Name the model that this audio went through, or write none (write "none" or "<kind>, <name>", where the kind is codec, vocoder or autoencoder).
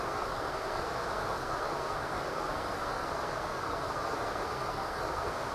codec, SNAC